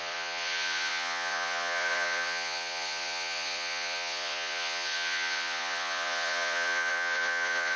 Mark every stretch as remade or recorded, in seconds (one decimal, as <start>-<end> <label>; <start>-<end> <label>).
0.0-7.8 remade

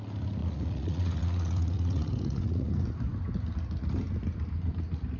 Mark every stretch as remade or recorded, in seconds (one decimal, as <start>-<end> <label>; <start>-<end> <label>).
0.0-0.4 recorded; 0.4-2.7 remade; 2.7-5.2 recorded

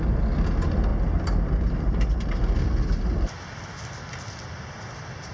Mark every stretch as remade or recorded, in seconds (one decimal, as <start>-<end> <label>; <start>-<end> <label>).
0.0-5.3 recorded

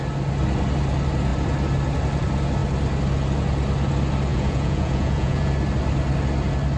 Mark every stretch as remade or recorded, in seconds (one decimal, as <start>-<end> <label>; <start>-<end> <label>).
0.0-4.3 recorded; 4.3-5.5 remade; 5.5-6.8 recorded

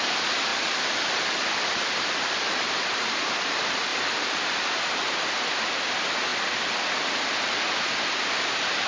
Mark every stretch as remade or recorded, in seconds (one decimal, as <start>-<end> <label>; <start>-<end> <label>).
0.0-0.5 recorded; 0.5-1.8 remade; 1.8-3.9 recorded; 3.9-4.4 remade; 4.4-6.3 recorded; 6.3-6.8 remade; 6.8-8.9 recorded

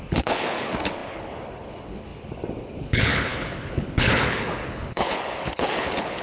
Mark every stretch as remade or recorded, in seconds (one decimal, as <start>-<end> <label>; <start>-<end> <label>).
0.0-6.2 remade